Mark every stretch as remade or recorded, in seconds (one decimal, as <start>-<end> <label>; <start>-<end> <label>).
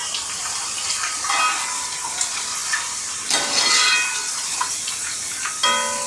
0.0-0.6 remade; 0.6-2.6 recorded; 2.6-5.1 remade; 5.1-6.1 recorded